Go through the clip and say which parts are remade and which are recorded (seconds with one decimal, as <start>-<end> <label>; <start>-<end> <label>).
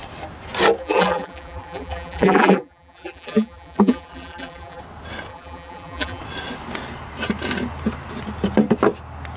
0.0-0.8 recorded; 0.8-4.8 remade; 4.8-5.3 recorded; 5.3-6.2 remade; 6.2-9.4 recorded